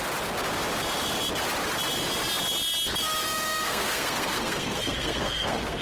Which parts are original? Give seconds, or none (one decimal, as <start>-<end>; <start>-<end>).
0.0-3.2